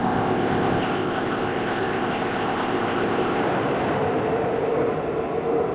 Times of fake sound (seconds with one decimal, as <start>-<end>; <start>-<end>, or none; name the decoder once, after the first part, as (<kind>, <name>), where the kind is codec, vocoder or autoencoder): 0.0-3.4 (codec, ZipCodec)